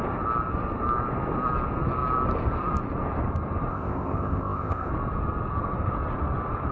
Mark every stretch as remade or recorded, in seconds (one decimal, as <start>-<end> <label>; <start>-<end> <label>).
0.0-3.7 recorded; 3.7-4.9 remade; 4.9-6.7 recorded